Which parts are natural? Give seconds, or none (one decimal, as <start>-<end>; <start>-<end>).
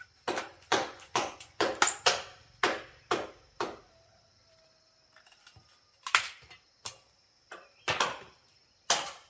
0.0-0.5; 1.7-9.3